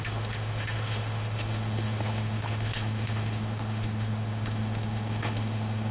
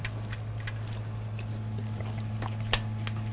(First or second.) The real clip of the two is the second